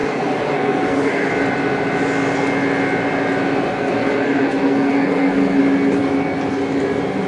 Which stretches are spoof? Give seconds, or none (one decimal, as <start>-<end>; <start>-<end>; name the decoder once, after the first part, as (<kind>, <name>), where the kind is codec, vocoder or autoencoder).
0.0-1.3 (codec, SNAC); 3.7-5.6